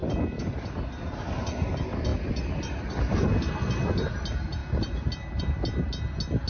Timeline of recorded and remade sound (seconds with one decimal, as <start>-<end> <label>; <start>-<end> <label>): 0.0-0.7 remade; 0.7-2.1 recorded; 2.1-3.3 remade; 3.3-6.5 recorded